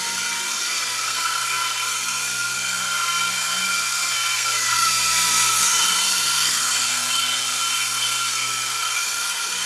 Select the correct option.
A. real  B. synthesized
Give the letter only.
B